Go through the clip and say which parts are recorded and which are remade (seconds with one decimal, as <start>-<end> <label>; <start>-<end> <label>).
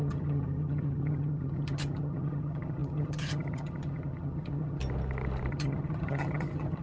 0.0-4.8 remade; 4.8-5.5 recorded; 5.5-6.8 remade